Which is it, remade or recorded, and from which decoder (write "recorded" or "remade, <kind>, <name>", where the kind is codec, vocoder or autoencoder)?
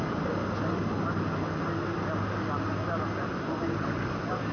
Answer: recorded